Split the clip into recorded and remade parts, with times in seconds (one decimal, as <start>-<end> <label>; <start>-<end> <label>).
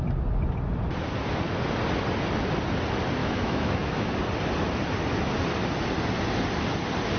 0.0-3.2 recorded; 3.2-4.1 remade; 4.1-7.2 recorded